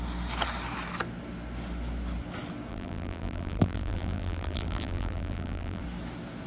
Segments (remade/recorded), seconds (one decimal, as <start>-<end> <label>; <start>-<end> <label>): 0.0-2.7 recorded; 2.7-5.8 remade; 5.8-6.5 recorded